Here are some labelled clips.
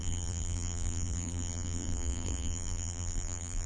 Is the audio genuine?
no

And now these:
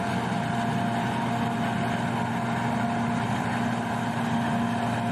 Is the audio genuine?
yes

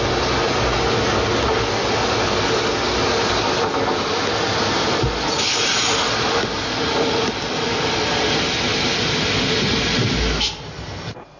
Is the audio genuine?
yes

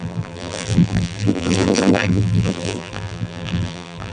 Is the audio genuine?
no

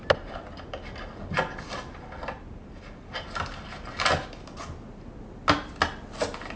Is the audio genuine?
yes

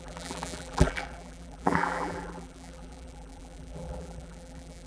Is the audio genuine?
no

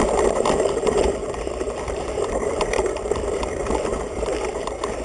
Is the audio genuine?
no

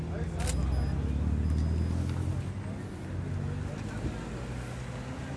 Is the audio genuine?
yes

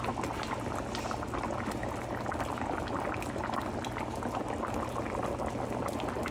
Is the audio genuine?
yes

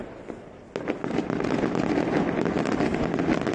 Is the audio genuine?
yes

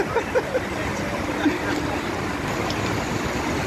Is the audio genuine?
yes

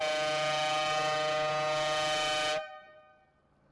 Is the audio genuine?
yes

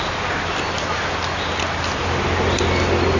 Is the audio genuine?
yes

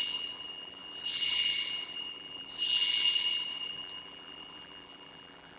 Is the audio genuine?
no